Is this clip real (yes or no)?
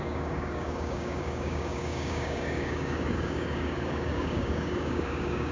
no